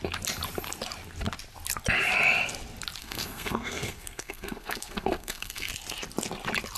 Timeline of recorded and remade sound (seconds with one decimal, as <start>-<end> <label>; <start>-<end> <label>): 0.0-3.0 recorded; 3.0-5.7 remade; 5.7-6.8 recorded